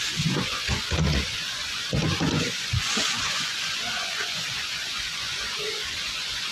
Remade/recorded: remade